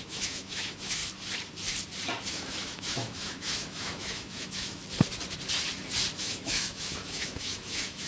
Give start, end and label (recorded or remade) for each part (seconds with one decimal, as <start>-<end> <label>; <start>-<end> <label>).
0.0-1.0 remade; 1.0-2.3 recorded; 2.3-4.8 remade; 4.8-6.2 recorded; 6.2-8.1 remade